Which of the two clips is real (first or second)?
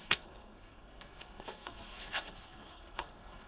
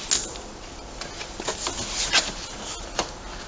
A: second